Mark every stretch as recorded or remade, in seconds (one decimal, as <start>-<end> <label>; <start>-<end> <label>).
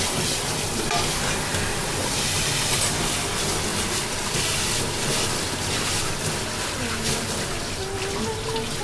0.0-8.8 recorded